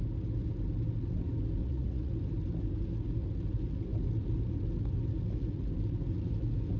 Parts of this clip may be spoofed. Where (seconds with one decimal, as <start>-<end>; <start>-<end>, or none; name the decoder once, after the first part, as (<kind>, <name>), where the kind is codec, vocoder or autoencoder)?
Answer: 1.6-2.1 (vocoder, Vocos)